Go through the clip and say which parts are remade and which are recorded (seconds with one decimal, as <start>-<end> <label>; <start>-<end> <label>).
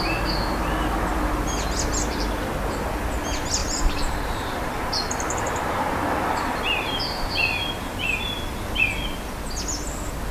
0.0-3.6 recorded; 3.6-7.3 remade; 7.3-10.3 recorded